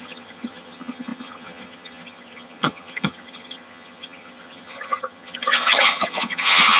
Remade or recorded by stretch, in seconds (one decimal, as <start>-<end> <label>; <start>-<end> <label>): 0.0-6.8 remade